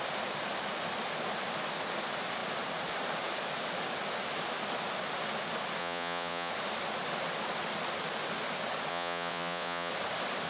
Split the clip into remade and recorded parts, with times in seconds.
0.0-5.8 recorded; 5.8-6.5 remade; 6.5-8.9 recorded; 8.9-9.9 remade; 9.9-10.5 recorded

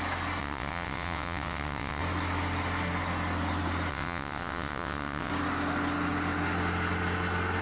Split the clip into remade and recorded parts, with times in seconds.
0.0-0.4 recorded; 0.4-2.0 remade; 2.0-3.9 recorded; 3.9-5.3 remade; 5.3-7.6 recorded